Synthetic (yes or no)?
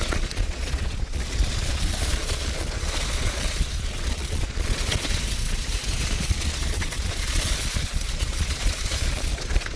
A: yes